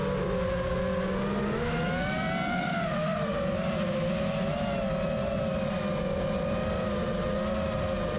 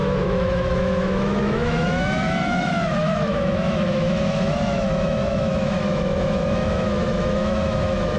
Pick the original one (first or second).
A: first